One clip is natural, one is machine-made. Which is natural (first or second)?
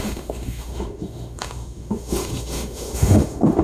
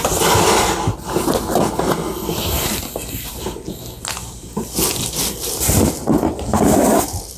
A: second